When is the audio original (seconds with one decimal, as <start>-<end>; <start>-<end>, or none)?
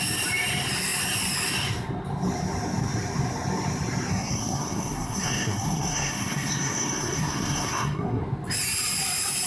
0.0-4.1; 8.2-9.5